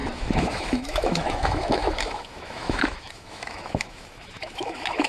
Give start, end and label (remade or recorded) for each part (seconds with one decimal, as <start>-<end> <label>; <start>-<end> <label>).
0.0-5.1 remade